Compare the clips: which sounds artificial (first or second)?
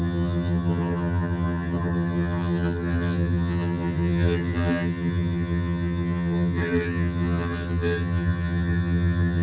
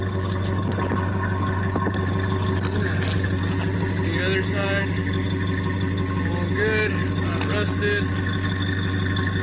first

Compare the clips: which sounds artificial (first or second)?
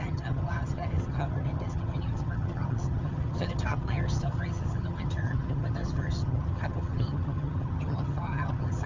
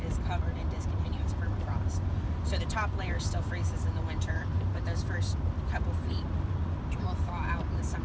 first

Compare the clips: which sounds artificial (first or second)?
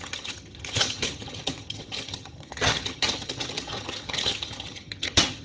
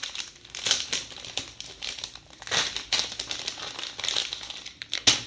first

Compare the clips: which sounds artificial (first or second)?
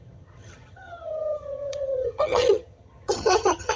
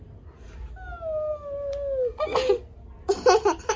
first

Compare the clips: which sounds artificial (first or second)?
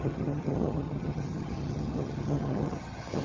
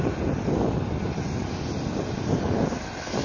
first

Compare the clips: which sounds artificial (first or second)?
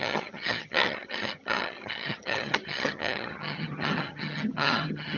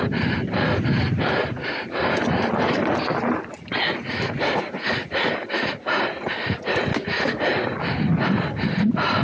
first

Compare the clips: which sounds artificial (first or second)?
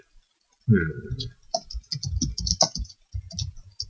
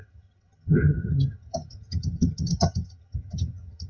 second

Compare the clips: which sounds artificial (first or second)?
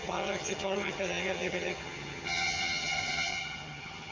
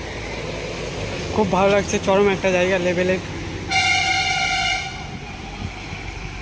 first